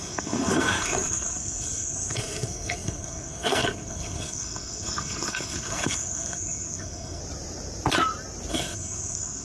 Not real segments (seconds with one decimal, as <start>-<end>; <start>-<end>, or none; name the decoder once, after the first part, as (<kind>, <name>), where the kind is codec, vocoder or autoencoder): 0.0-7.2 (codec, SNAC); 8.5-9.4